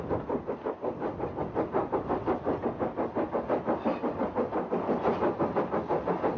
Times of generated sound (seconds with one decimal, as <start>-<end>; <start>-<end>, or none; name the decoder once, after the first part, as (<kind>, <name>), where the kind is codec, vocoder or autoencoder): none